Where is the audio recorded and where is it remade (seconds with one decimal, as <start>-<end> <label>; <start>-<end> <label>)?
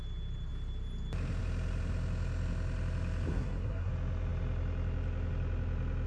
0.0-3.3 recorded; 3.3-3.9 remade; 3.9-6.1 recorded